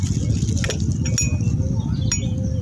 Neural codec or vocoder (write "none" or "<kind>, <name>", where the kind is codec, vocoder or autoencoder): none